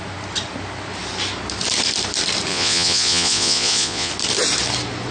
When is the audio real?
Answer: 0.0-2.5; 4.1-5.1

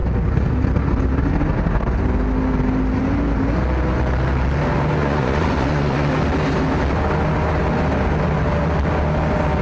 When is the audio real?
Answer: 0.0-5.0; 6.1-9.6